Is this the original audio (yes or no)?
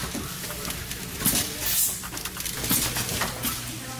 yes